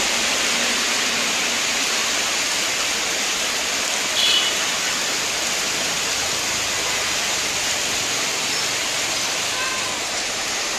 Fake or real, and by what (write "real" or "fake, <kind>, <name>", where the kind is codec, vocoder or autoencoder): real